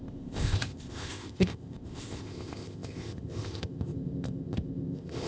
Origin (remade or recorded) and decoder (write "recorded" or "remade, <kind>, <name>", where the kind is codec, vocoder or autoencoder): remade, codec, ZipCodec